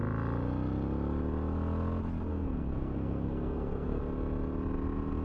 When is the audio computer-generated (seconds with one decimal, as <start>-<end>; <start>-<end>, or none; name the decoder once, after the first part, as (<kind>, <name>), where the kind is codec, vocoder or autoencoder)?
2.3-4.0 (codec, SNAC)